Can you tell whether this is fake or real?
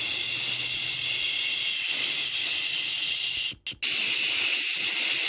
real